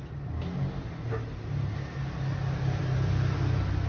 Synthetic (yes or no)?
no